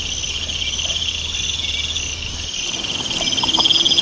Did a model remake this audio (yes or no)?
no